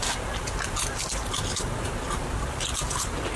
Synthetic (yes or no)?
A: no